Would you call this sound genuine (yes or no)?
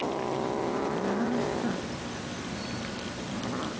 yes